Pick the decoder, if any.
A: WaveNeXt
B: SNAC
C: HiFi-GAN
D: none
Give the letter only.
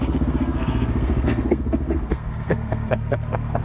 B